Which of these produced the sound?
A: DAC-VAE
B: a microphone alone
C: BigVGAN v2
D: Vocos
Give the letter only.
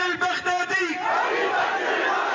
C